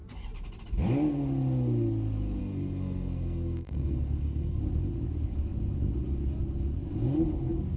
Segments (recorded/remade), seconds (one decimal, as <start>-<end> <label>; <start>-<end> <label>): 0.0-2.4 recorded; 2.4-4.6 remade; 4.6-7.8 recorded